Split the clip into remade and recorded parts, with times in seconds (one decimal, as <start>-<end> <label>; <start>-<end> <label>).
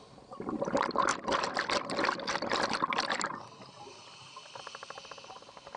0.0-5.8 recorded